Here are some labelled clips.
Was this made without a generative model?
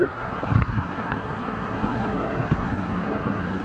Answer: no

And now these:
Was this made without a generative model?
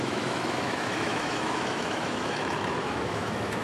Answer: no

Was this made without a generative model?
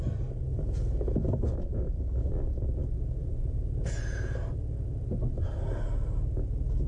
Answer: yes